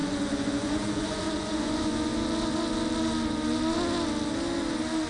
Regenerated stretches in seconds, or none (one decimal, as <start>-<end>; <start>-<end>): 0.0-2.1